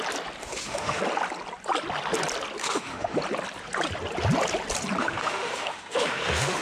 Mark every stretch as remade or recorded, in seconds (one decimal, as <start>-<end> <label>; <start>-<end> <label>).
0.0-0.4 recorded; 0.4-1.0 remade; 1.0-2.6 recorded; 2.6-3.2 remade; 3.2-5.0 recorded; 5.0-6.6 remade